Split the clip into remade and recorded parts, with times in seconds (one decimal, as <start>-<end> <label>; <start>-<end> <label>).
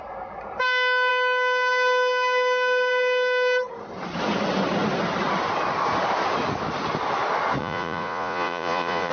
0.0-7.6 recorded; 7.6-9.1 remade